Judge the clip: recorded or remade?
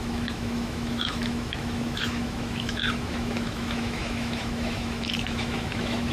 remade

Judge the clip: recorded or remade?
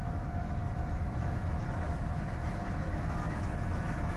remade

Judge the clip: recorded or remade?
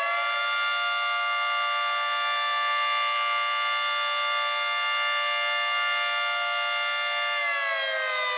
recorded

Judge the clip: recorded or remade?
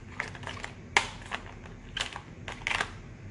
recorded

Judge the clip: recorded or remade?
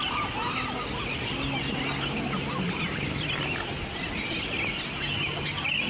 recorded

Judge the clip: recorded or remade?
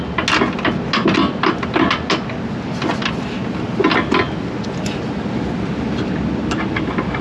recorded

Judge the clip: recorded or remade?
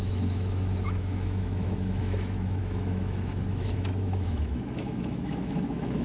remade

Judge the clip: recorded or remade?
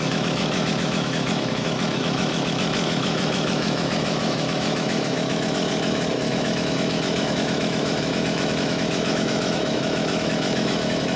remade